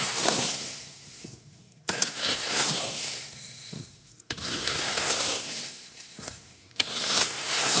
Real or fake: fake